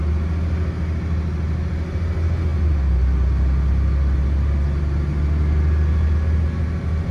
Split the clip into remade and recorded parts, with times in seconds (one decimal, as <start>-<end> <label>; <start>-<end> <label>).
0.0-7.1 recorded